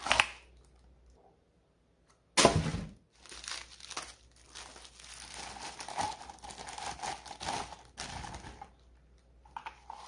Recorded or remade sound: recorded